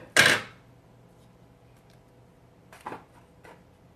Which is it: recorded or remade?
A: recorded